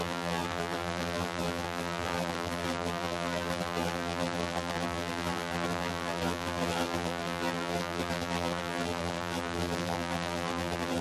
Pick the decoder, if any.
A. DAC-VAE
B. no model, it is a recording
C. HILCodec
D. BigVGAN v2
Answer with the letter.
D